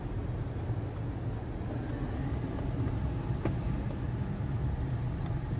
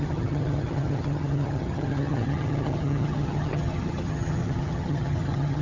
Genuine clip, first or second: first